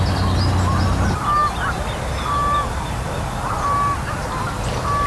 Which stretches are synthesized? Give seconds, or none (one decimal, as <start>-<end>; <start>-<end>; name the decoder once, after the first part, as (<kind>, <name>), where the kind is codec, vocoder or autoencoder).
none